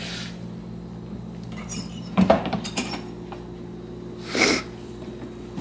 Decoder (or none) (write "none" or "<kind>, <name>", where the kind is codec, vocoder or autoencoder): none